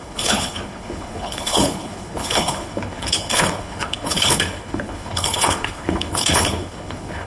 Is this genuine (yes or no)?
no